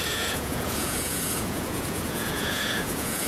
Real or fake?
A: fake